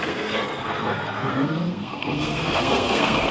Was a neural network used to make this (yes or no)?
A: yes